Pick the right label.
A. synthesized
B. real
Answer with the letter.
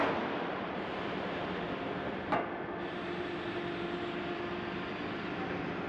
A